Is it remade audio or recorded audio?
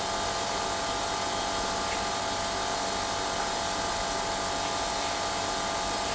recorded